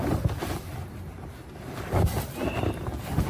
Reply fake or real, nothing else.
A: real